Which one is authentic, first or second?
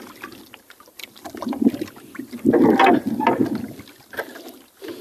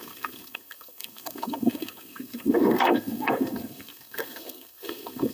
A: first